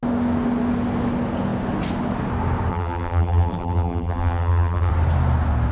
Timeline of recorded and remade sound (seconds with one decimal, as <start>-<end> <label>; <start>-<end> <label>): 0.0-2.7 recorded; 2.7-4.9 remade; 4.9-5.7 recorded